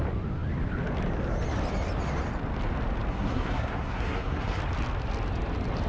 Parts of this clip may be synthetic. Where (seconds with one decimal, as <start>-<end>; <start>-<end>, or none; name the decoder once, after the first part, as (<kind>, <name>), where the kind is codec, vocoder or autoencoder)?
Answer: 3.1-4.6 (codec, SNAC)